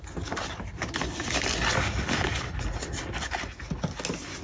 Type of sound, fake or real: real